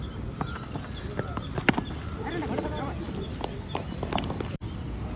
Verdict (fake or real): real